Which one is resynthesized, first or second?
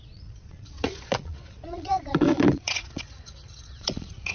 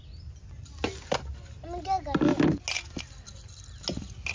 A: first